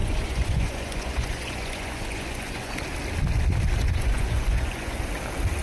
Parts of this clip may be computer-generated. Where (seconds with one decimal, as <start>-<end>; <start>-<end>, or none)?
0.0-2.8; 3.8-5.0